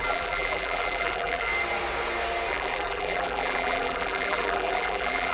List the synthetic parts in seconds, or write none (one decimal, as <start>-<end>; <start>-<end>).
0.0-1.5; 2.5-5.3